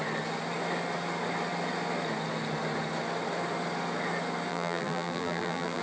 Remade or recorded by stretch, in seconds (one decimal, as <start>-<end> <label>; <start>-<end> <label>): 0.0-4.5 recorded; 4.5-5.8 remade